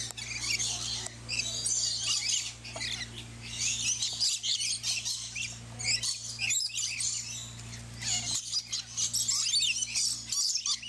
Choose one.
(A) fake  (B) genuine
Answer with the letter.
B